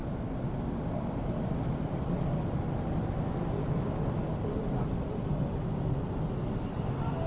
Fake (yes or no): no